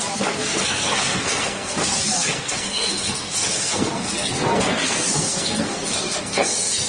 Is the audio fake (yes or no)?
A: yes